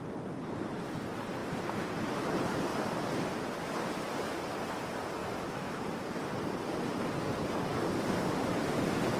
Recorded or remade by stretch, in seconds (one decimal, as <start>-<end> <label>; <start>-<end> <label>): 0.0-5.2 recorded; 5.2-5.8 remade; 5.8-9.2 recorded